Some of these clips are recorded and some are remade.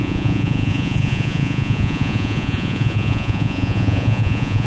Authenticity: remade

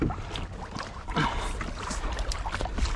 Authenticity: recorded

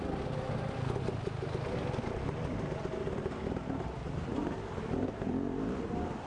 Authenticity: recorded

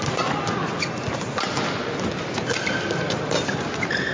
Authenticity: recorded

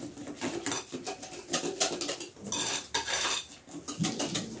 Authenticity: recorded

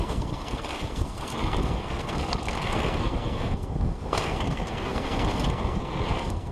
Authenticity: remade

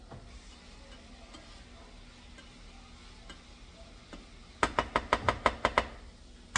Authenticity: recorded